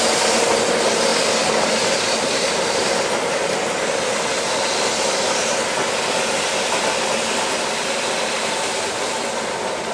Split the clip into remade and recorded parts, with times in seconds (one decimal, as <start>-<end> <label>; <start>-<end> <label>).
0.0-9.9 recorded